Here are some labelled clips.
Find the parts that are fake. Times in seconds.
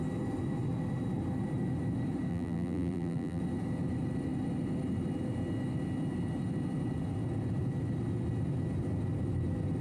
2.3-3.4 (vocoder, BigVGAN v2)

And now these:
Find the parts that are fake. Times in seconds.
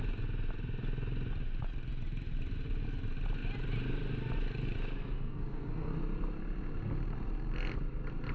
5.0-5.9 (codec, SNAC)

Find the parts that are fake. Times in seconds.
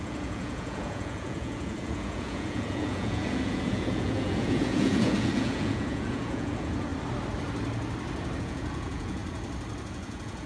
0.0-6.9 (vocoder, Vocos); 8.4-9.2; 9.9-10.5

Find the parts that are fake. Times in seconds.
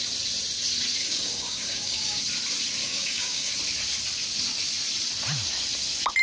1.0-2.2 (codec, DAC); 2.8-3.5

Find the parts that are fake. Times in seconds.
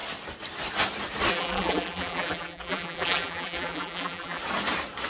1.3-4.4 (vocoder, BigVGAN v2)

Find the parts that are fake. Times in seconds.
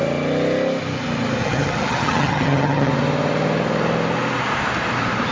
1.4-2.9 (vocoder, HiFi-GAN)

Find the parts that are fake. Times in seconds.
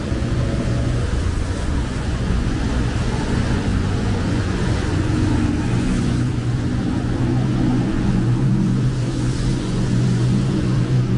0.0-11.2 (vocoder, Vocos)